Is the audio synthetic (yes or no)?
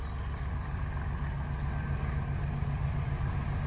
no